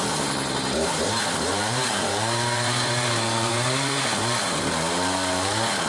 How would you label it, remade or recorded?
remade